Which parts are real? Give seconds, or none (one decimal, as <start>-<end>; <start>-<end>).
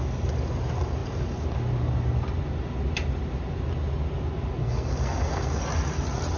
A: 0.0-4.6; 5.6-6.4